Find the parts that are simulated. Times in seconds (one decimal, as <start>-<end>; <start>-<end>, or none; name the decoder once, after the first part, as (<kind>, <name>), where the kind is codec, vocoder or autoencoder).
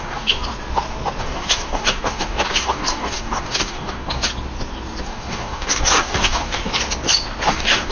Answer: 0.0-0.4 (codec, DAC); 1.2-4.3; 5.0-6.6; 7.5-7.9